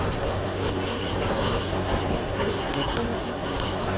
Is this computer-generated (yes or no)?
yes